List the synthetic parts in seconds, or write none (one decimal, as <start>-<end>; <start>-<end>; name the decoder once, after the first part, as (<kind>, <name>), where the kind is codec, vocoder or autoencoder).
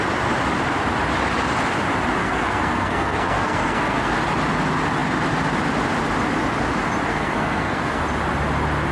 2.2-4.1 (codec, SNAC); 7.1-8.0